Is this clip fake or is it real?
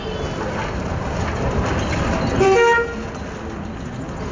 real